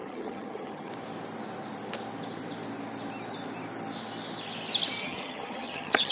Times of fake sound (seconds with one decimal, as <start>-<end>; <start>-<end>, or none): 0.0-0.9; 5.0-6.1